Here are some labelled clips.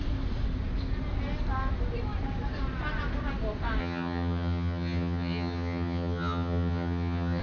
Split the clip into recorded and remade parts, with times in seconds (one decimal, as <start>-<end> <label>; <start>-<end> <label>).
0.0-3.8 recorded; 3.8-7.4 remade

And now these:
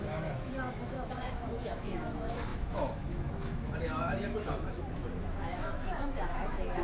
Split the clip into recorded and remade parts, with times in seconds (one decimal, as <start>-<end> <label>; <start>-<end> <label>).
0.0-6.8 remade

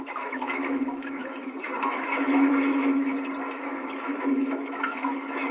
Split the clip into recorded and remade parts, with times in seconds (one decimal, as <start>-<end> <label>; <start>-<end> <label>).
0.0-3.1 remade; 3.1-3.6 recorded; 3.6-5.5 remade

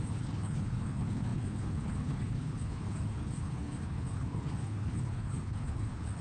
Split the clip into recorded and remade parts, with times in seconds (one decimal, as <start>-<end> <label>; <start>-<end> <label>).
0.0-6.2 remade

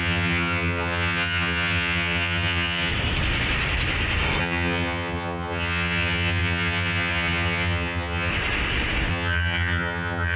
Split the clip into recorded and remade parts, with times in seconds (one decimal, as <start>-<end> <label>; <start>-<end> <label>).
0.0-2.9 remade; 2.9-4.4 recorded; 4.4-8.3 remade; 8.3-9.1 recorded; 9.1-10.4 remade

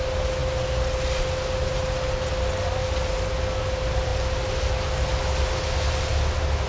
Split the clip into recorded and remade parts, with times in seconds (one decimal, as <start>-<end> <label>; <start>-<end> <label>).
0.0-6.7 recorded

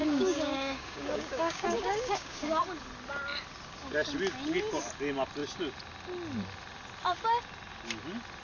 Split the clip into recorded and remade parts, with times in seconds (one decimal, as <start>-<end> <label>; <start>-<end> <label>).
0.0-2.6 remade; 2.6-8.4 recorded

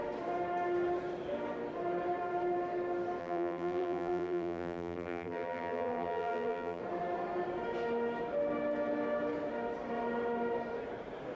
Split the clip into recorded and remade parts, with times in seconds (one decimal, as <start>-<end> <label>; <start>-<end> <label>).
0.0-3.2 recorded; 3.2-6.8 remade; 6.8-11.4 recorded